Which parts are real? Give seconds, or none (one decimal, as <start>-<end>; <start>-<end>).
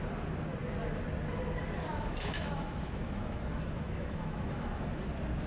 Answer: 0.0-1.9; 5.0-5.5